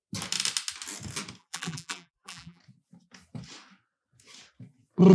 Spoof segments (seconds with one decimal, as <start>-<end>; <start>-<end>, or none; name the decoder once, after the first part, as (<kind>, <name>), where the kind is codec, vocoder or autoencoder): 1.4-2.6 (vocoder, BigVGAN v2)